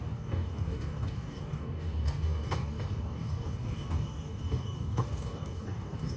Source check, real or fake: fake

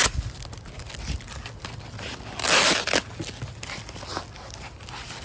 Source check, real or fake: real